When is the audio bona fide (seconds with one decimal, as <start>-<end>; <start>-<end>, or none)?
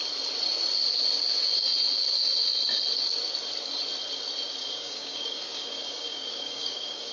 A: 0.0-4.6